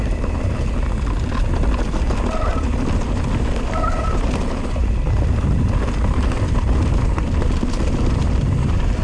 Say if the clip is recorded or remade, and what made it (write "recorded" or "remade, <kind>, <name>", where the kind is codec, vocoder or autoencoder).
recorded